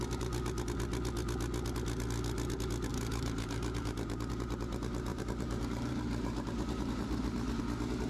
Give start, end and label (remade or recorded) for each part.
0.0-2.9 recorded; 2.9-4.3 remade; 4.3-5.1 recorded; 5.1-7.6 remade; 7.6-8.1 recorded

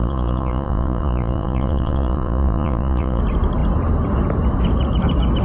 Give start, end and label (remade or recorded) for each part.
0.0-3.2 remade; 3.2-5.4 recorded

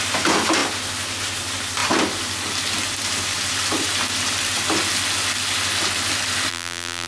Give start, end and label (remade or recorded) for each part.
0.0-6.5 recorded; 6.5-7.1 remade

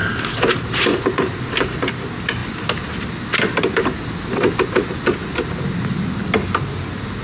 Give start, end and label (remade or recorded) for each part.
0.0-1.5 remade; 1.5-2.4 recorded; 2.4-3.6 remade; 3.6-7.2 recorded

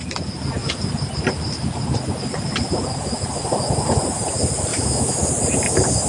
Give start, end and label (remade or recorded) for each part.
0.0-4.7 recorded; 4.7-5.2 remade; 5.2-6.1 recorded